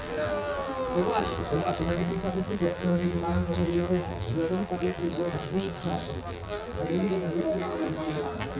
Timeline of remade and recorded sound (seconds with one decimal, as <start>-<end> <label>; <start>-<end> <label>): 0.0-8.6 remade